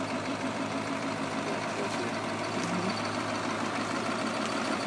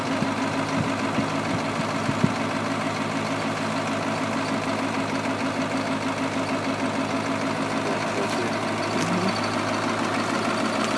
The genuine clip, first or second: second